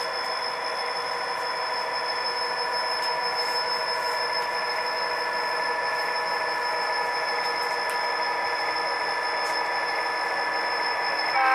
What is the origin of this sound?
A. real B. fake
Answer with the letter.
A